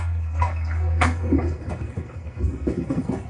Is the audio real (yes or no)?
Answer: no